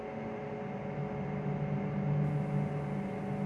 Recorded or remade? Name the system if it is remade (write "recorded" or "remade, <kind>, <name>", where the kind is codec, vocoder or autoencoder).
recorded